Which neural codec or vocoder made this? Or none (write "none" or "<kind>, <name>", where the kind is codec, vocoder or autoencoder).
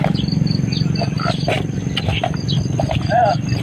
none